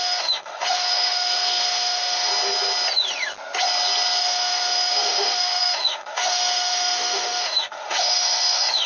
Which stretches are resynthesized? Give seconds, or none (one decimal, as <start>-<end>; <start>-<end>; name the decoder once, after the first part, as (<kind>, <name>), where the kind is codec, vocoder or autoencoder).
0.0-2.3 (autoencoder, DAC-VAE); 4.2-8.9